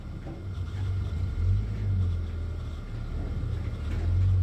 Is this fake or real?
real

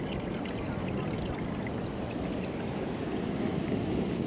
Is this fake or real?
real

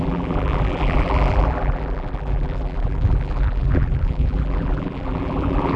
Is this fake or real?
fake